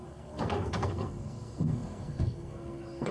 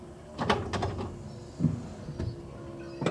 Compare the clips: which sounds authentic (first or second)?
second